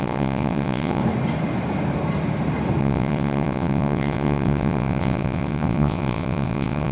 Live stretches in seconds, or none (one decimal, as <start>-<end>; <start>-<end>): 1.0-2.8